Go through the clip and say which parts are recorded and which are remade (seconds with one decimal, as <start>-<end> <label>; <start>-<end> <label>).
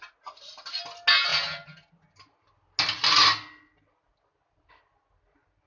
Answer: 0.0-5.7 recorded